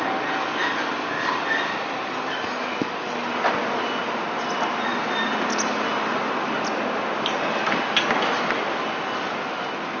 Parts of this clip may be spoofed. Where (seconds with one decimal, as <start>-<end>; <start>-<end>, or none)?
none